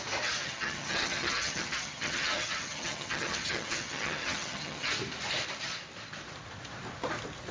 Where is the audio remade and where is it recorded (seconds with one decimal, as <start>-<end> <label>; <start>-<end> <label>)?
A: 0.0-0.4 recorded; 0.4-4.9 remade; 4.9-7.5 recorded